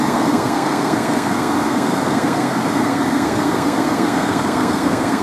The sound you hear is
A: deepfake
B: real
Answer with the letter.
A